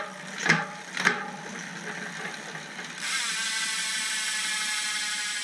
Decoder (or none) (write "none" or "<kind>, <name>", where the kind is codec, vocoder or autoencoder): none